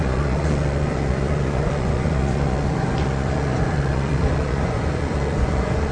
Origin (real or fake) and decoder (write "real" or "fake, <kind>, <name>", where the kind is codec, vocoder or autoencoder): fake, vocoder, Vocos